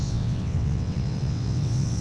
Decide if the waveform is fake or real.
fake